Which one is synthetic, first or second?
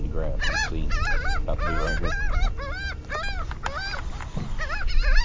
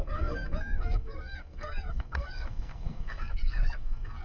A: second